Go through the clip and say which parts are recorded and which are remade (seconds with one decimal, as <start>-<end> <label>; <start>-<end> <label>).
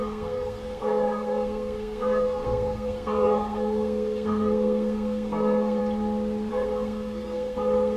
0.0-5.8 remade; 5.8-6.5 recorded; 6.5-8.0 remade